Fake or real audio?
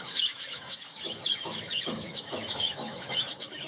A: fake